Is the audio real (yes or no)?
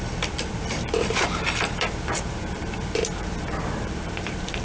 no